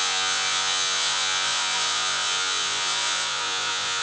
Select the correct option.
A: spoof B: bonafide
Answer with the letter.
A